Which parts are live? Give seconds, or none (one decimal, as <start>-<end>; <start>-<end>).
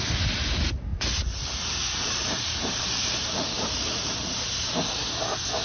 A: 0.0-0.9; 4.3-5.6